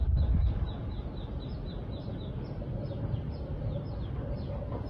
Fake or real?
real